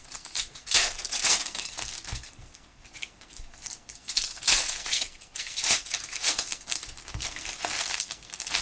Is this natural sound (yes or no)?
no